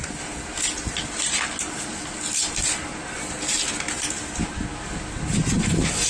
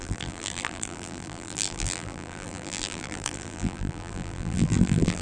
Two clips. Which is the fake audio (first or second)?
second